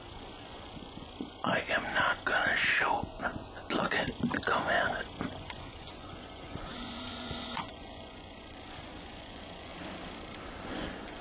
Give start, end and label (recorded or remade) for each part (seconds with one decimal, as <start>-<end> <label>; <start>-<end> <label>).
0.0-9.7 remade; 9.7-10.6 recorded; 10.6-11.2 remade